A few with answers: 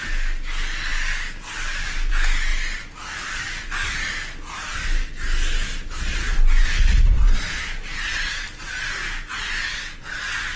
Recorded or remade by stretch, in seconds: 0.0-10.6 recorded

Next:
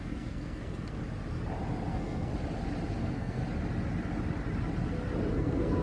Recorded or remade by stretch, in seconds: 0.0-1.0 remade; 1.0-1.9 recorded; 1.9-2.3 remade; 2.3-3.0 recorded; 3.0-3.4 remade; 3.4-5.3 recorded; 5.3-5.8 remade